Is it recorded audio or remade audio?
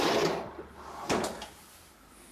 recorded